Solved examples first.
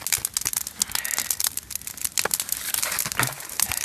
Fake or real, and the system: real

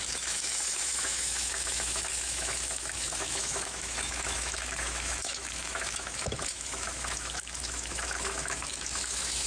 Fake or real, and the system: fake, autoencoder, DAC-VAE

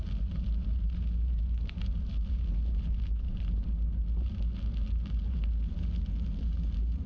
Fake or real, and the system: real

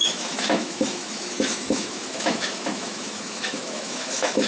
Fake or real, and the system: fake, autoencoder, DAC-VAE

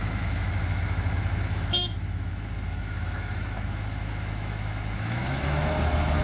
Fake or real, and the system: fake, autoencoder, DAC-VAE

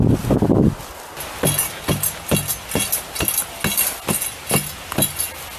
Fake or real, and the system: real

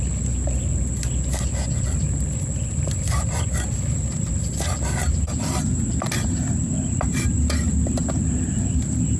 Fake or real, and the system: real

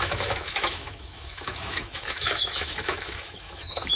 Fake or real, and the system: fake, autoencoder, DAC-VAE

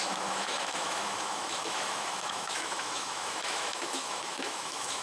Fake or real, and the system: fake, autoencoder, DAC-VAE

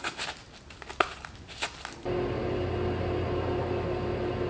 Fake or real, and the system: real